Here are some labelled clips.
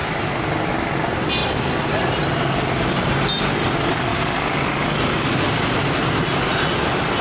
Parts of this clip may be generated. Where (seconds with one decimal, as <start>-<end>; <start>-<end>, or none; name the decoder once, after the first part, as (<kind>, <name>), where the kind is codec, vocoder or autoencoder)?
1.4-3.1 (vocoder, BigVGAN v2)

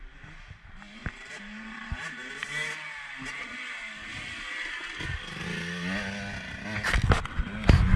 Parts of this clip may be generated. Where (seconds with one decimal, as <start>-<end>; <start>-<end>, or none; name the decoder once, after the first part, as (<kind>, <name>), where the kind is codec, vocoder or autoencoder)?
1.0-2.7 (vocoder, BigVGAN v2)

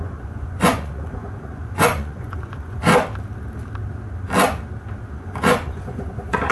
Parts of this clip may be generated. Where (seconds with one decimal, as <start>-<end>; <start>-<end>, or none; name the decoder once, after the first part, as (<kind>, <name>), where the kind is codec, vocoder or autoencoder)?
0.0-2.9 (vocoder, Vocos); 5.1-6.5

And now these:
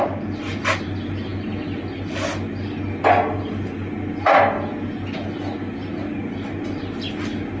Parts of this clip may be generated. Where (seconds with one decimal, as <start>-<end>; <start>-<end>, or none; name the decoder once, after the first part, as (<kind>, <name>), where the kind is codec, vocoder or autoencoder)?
none

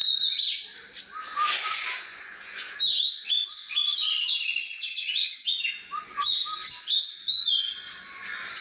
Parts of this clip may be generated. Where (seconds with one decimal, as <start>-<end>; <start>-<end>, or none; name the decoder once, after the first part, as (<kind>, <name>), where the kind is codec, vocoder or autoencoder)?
1.3-6.4 (vocoder, Vocos); 8.0-8.6

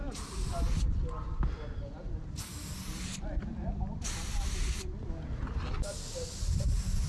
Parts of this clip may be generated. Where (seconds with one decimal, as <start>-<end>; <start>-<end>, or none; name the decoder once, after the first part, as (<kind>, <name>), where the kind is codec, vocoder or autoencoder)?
none

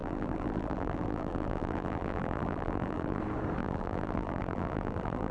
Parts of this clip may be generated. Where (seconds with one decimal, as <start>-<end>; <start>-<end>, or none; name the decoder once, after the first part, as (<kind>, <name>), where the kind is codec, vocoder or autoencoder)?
0.0-3.2 (vocoder, BigVGAN v2); 3.6-5.3

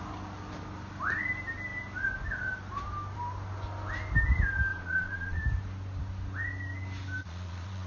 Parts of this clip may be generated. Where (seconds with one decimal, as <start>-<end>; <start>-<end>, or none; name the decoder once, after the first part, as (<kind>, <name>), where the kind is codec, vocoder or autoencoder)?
4.7-5.4 (vocoder, Vocos); 7.2-7.9